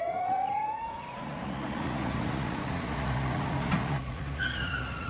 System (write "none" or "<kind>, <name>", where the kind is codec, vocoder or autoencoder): vocoder, Vocos